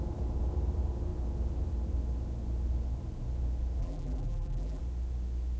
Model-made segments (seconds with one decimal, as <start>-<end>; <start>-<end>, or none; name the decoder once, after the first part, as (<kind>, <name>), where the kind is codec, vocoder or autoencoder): 3.8-4.8 (vocoder, BigVGAN v2)

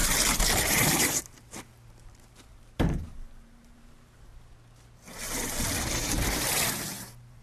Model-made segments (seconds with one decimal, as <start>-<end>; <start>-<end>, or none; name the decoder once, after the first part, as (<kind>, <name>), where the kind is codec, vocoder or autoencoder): 0.0-4.3 (vocoder, BigVGAN v2); 6.4-7.4

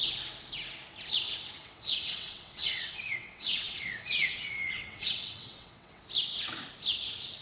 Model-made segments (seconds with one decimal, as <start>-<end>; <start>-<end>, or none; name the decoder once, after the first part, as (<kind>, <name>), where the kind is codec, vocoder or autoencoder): 1.6-6.0 (vocoder, WaveNeXt)

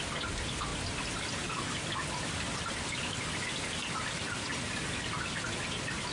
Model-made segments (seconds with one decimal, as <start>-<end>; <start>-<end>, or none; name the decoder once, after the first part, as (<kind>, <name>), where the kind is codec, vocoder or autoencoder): none

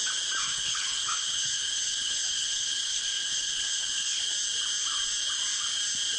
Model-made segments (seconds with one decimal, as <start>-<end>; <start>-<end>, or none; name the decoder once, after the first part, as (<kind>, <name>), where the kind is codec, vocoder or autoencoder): 0.5-4.2 (codec, HILCodec)

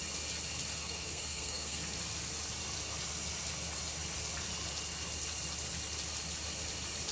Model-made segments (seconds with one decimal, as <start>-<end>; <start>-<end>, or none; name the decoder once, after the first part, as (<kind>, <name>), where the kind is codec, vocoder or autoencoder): 0.7-1.8 (codec, SNAC)

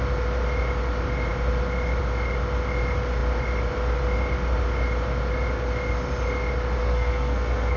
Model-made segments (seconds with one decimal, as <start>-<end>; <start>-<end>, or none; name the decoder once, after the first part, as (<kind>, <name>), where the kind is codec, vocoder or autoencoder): 6.8-7.8 (codec, SNAC)

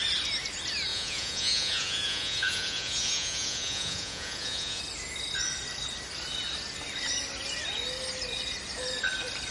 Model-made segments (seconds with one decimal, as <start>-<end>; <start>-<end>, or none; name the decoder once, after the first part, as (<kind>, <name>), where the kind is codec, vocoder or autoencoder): 0.9-4.8 (vocoder, Vocos)